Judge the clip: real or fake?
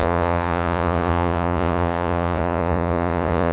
fake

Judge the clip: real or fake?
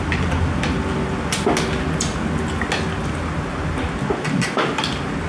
real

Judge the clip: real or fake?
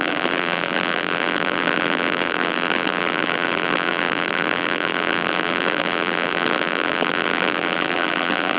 fake